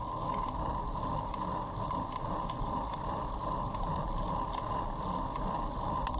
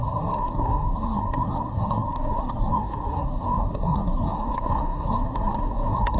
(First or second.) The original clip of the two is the first